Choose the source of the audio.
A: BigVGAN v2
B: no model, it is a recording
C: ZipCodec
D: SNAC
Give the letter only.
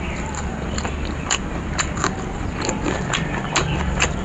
A